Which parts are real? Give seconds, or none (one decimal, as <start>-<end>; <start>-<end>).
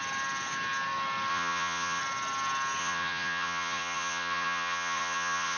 0.0-1.3; 2.0-2.8